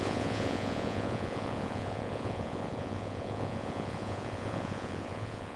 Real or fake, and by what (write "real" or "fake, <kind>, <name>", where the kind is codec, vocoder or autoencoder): fake, vocoder, Vocos